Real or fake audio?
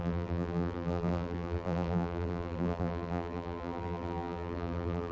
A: fake